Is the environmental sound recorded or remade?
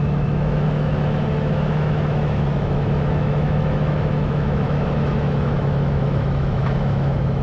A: remade